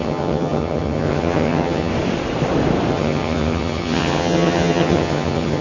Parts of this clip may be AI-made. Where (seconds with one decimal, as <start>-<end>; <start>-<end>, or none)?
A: 0.0-1.9; 2.9-5.6